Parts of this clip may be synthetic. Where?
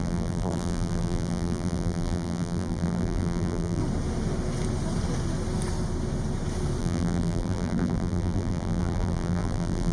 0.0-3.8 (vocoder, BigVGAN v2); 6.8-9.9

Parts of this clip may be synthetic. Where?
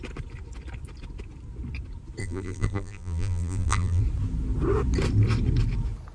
2.2-4.0 (vocoder, BigVGAN v2)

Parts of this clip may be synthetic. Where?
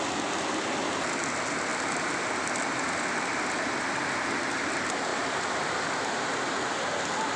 1.7-2.3 (vocoder, BigVGAN v2); 5.1-5.8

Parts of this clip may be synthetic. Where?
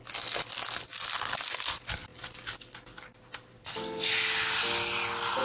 none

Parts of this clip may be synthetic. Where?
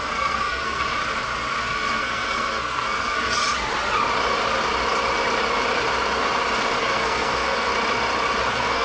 0.0-1.0 (codec, SNAC); 1.6-3.4; 6.8-7.7; 8.4-8.8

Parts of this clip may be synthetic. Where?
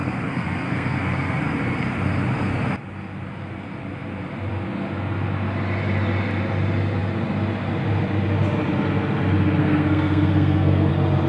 0.0-1.4 (codec, SNAC); 9.6-10.9